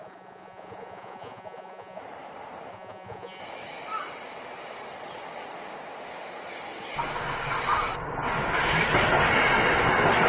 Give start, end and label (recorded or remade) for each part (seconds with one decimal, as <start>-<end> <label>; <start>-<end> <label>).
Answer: 0.0-2.0 remade; 2.0-2.7 recorded; 2.7-3.4 remade; 3.4-10.3 recorded